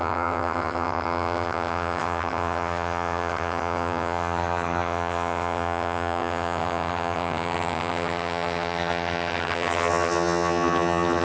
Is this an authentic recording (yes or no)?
no